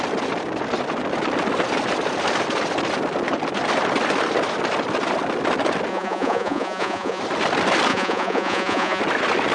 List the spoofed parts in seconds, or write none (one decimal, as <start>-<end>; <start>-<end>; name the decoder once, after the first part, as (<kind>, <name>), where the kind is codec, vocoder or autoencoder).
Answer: 5.9-7.2 (vocoder, Vocos); 7.9-9.0